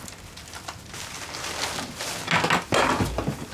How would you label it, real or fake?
real